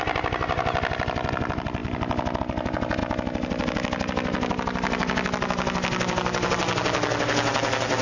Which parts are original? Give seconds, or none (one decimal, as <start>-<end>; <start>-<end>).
0.0-8.0